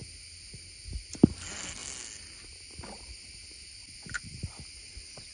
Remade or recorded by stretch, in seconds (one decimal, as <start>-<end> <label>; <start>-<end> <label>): 0.0-3.8 recorded; 3.8-5.3 remade